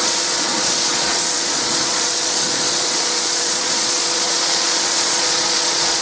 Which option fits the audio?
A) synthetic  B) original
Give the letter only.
A